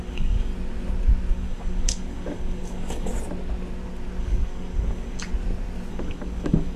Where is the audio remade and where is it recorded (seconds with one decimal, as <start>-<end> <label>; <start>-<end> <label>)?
0.0-0.5 remade; 0.5-1.3 recorded; 1.3-3.1 remade; 3.1-4.2 recorded; 4.2-5.3 remade; 5.3-5.9 recorded; 5.9-6.8 remade